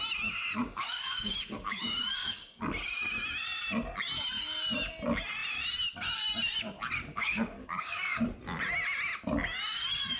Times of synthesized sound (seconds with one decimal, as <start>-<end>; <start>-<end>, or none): 0.6-2.6; 7.1-8.2